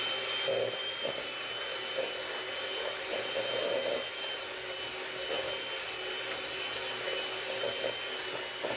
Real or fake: real